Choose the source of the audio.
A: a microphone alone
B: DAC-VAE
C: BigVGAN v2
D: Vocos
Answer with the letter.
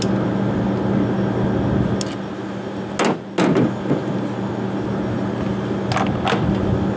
A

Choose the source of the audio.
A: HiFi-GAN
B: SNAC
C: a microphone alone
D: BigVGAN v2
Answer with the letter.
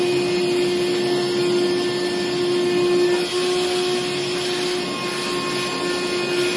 C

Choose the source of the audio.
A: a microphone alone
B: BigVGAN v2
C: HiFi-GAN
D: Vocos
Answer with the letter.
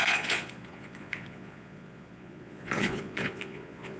D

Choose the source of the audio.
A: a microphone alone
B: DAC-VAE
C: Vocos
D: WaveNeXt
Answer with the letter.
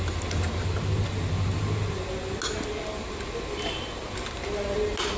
A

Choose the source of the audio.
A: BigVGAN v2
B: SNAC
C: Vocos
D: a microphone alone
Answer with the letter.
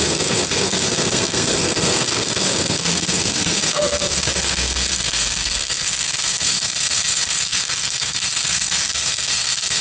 B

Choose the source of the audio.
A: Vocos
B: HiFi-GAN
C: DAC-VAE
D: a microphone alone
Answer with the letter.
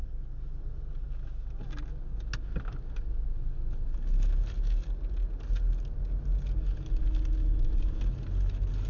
D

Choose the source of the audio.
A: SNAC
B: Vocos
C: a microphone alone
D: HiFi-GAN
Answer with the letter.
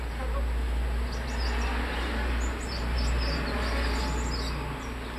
C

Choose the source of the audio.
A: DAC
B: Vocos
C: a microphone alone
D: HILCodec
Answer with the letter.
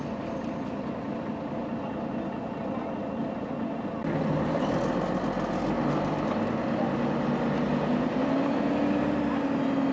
C